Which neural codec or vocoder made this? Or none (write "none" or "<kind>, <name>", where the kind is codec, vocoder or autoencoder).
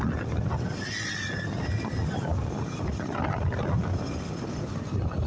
none